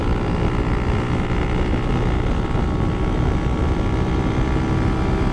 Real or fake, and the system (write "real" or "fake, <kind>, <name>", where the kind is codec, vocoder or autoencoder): real